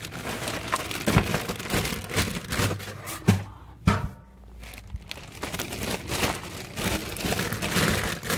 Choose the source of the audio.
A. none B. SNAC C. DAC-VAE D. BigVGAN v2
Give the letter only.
A